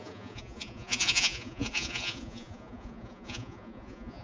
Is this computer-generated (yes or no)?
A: yes